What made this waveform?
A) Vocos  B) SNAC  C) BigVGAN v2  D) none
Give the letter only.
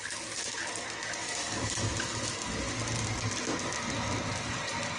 D